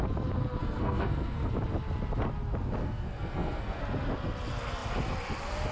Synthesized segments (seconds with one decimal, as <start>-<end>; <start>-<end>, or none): 0.6-1.5; 2.8-3.8